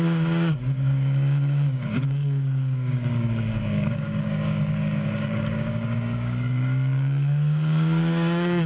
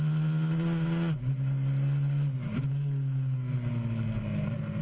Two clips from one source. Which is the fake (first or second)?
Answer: first